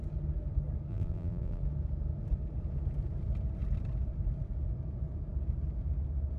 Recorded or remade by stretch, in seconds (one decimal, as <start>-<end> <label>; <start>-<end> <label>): 0.0-0.9 recorded; 0.9-1.6 remade; 1.6-6.4 recorded